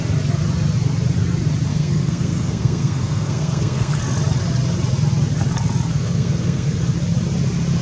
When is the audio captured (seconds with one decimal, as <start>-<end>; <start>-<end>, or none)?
0.0-1.7; 4.0-5.9; 6.9-7.8